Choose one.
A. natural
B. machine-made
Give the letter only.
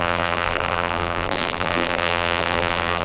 B